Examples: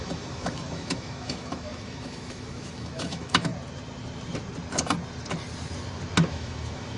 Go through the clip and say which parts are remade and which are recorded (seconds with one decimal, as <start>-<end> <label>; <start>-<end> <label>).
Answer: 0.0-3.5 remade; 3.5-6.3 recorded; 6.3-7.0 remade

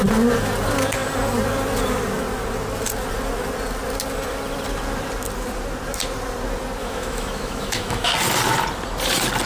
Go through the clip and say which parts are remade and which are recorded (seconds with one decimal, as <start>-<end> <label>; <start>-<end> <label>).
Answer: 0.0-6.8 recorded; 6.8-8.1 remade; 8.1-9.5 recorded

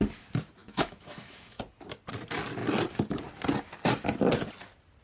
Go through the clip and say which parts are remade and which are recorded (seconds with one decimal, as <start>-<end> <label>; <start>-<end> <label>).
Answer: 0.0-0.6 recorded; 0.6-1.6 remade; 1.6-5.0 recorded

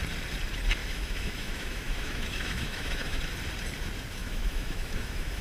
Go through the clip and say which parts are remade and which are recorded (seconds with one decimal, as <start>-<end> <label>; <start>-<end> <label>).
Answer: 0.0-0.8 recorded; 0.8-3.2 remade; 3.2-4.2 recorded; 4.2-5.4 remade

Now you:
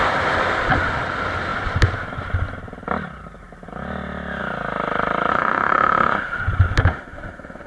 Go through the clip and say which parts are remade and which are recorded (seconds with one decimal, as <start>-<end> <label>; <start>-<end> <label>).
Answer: 0.0-5.3 recorded; 5.3-6.4 remade; 6.4-6.9 recorded; 6.9-7.7 remade

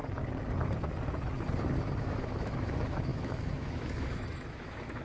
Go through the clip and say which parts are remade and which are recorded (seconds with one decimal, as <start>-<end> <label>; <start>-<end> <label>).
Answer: 0.0-2.0 recorded; 2.0-5.0 remade

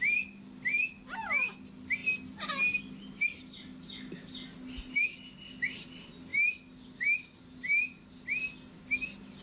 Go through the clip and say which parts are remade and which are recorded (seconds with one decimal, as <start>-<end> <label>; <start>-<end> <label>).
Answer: 0.0-9.4 recorded